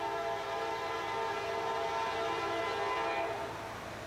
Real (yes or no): yes